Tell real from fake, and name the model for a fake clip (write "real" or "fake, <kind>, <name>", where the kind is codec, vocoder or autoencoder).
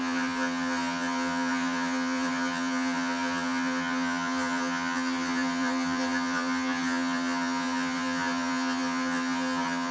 fake, vocoder, HiFi-GAN